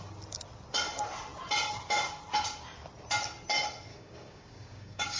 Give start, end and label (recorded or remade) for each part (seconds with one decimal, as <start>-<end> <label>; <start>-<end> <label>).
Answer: 0.0-3.9 recorded; 3.9-5.2 remade